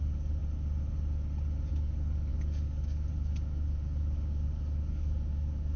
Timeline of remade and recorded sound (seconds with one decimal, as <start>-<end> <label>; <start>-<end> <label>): 0.0-0.4 remade; 0.4-1.7 recorded; 1.7-5.8 remade